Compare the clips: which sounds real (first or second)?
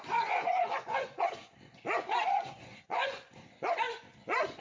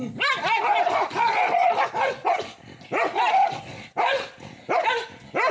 second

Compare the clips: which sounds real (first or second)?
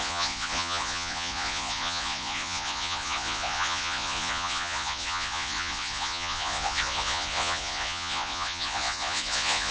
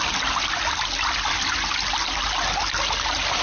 second